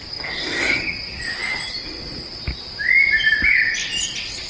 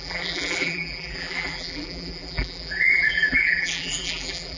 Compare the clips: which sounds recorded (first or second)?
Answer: first